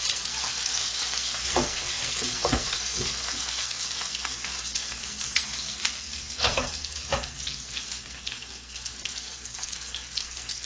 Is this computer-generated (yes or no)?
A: yes